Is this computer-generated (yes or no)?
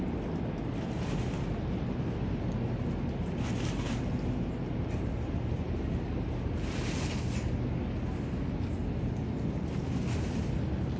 no